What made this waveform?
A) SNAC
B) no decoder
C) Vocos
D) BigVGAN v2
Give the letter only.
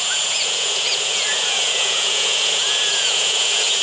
C